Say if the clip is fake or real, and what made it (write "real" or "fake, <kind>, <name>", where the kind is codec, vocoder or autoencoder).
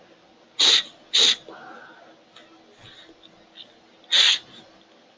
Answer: real